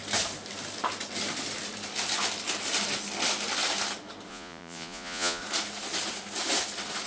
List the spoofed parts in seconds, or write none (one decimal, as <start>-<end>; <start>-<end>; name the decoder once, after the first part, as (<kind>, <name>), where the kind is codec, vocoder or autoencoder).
4.3-5.4 (vocoder, Vocos)